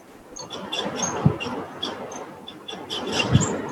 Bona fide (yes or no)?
yes